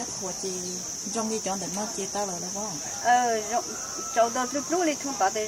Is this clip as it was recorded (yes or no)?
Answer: yes